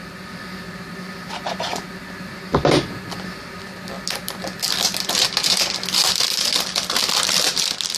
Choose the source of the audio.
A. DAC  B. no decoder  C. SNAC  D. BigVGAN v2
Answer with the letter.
B